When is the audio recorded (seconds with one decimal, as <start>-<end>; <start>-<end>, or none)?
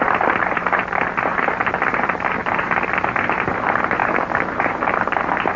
0.0-5.6